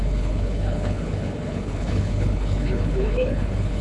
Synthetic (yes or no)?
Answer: yes